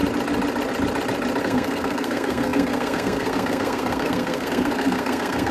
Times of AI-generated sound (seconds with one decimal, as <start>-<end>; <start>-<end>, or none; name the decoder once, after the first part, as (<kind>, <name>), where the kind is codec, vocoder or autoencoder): 1.4-5.5 (codec, SNAC)